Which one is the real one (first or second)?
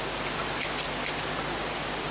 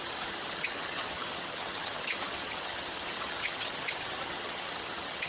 first